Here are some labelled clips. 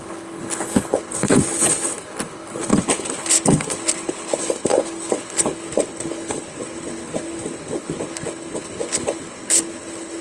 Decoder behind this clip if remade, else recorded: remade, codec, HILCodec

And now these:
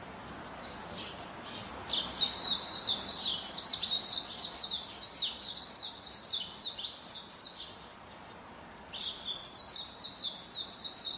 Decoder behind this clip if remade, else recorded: recorded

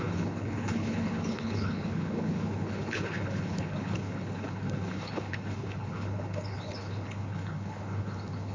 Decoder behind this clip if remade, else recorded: remade, codec, HILCodec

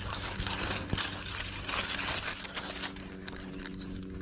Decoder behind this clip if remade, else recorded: recorded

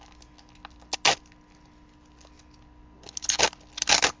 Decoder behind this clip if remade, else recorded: recorded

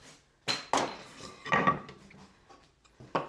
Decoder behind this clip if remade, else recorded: recorded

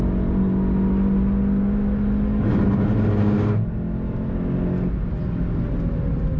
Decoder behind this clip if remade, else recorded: recorded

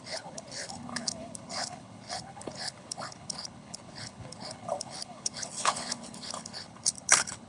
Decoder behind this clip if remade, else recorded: remade, codec, HILCodec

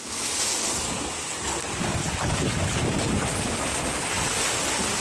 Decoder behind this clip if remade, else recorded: recorded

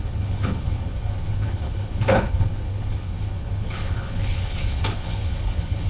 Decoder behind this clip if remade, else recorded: remade, codec, HILCodec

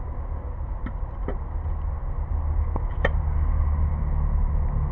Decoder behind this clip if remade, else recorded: recorded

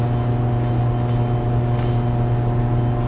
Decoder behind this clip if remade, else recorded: recorded